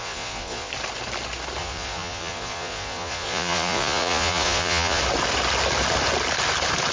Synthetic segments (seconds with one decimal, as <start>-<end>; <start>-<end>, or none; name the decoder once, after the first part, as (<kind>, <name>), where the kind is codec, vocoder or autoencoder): 0.0-0.7 (vocoder, Vocos); 1.6-5.0